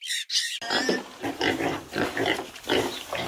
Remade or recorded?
recorded